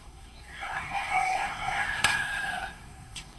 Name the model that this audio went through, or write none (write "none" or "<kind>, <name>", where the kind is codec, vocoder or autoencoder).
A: codec, SNAC